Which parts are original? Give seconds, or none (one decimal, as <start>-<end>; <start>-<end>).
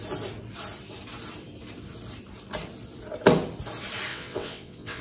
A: 0.0-4.1